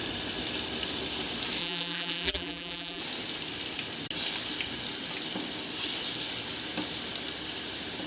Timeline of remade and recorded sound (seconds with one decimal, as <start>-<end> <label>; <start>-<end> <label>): 0.0-1.6 recorded; 1.6-3.0 remade; 3.0-8.1 recorded